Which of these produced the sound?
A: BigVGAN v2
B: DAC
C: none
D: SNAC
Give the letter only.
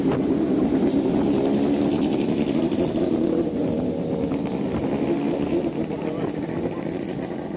C